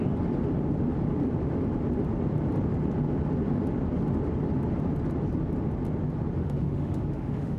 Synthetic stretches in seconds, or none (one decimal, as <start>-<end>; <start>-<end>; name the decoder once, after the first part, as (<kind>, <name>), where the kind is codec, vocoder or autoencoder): 6.4-7.6 (autoencoder, DAC-VAE)